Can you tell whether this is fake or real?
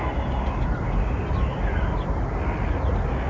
real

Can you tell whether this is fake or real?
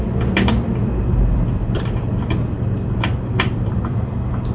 fake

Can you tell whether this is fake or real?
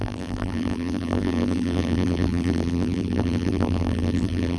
fake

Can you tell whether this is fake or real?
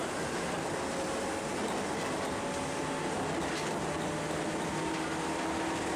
real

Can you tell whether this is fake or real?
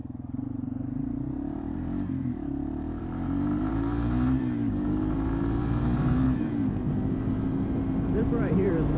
fake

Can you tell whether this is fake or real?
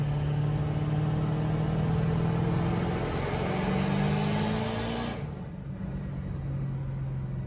real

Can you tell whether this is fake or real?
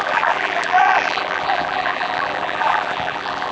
fake